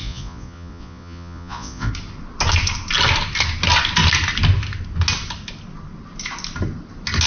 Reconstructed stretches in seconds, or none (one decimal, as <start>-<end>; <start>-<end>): 0.0-1.9